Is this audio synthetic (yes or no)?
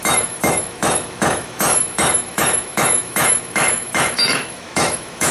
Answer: yes